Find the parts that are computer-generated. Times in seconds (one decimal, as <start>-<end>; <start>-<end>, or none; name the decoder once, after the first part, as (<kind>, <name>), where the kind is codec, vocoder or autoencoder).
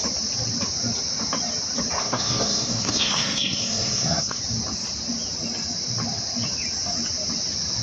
2.0-4.4 (codec, SNAC)